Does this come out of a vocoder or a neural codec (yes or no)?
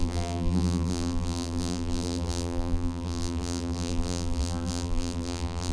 yes